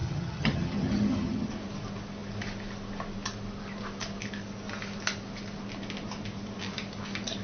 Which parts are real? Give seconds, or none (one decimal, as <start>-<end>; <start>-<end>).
1.5-7.4